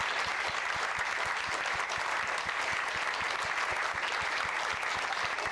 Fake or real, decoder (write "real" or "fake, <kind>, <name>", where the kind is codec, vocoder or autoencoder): real